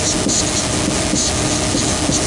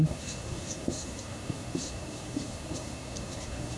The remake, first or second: second